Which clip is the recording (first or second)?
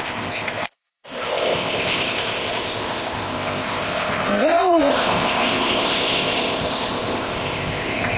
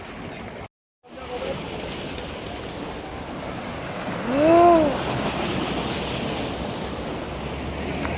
second